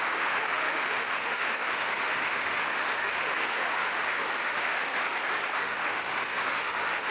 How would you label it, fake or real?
fake